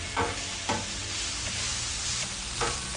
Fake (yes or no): yes